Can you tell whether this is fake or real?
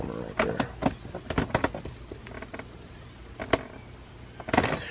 real